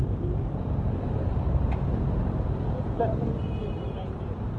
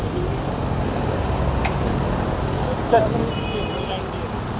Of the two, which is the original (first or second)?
second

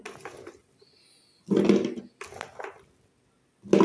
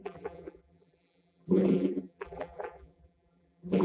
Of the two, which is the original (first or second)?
first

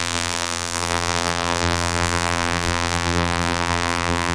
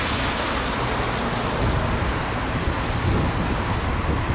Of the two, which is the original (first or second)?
second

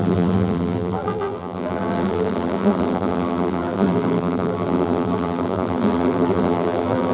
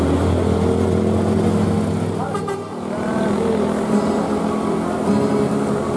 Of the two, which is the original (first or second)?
second